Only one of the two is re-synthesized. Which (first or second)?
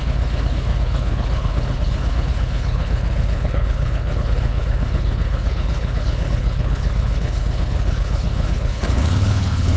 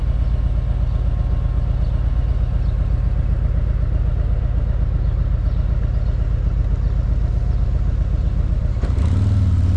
first